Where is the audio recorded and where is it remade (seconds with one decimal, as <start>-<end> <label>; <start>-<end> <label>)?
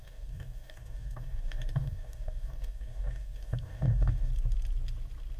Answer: 0.0-4.3 remade; 4.3-5.4 recorded